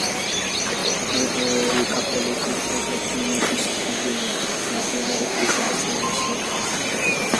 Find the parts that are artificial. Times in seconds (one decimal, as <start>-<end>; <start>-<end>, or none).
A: 3.7-5.7

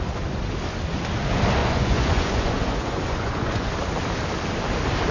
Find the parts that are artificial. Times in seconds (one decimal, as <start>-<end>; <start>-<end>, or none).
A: 1.6-3.7